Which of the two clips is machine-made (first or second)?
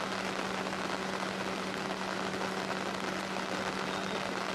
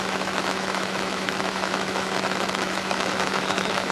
second